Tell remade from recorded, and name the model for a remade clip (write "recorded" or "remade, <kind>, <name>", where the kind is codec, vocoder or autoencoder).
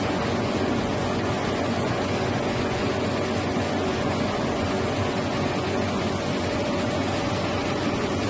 remade, vocoder, Vocos